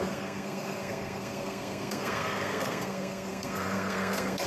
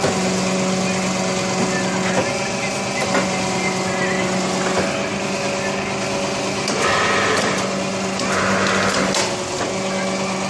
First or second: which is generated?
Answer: first